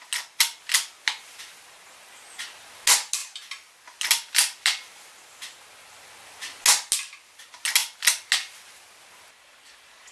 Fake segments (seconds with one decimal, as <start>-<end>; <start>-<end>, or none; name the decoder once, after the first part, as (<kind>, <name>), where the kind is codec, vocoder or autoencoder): none